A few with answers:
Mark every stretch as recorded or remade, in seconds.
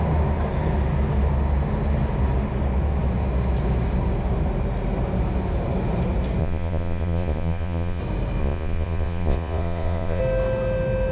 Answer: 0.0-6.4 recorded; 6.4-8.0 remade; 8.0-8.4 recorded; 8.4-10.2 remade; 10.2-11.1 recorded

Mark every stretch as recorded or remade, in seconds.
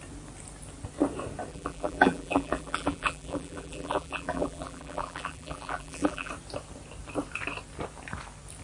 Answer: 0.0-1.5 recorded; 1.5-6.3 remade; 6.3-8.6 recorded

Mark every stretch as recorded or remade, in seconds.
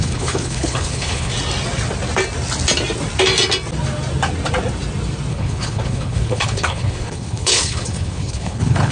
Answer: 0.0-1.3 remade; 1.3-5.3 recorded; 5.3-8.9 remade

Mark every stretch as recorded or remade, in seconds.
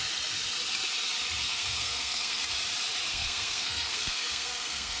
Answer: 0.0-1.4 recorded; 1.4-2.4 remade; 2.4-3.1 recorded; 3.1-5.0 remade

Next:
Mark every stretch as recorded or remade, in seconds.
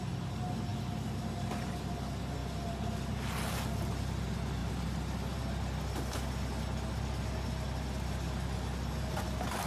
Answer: 0.0-9.7 recorded